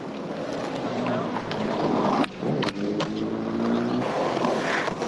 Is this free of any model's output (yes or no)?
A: yes